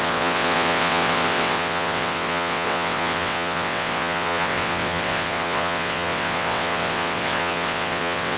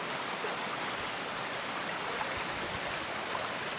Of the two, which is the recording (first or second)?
second